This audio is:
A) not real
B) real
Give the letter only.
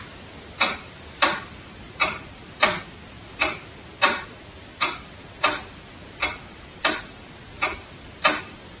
A